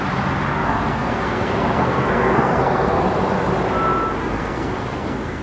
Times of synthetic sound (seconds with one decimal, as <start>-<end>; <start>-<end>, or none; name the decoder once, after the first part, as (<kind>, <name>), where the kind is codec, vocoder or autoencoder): 0.5-3.0 (codec, SNAC); 4.2-5.4